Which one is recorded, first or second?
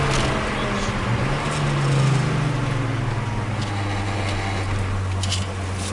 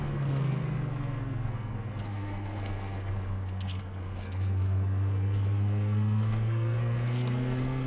first